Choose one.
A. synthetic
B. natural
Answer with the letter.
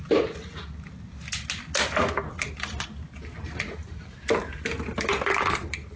B